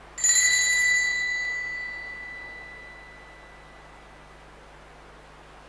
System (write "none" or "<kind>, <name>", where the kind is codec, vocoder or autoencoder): none